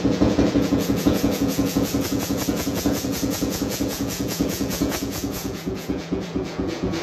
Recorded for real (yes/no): no